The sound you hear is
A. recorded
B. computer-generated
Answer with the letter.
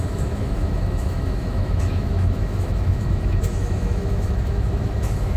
B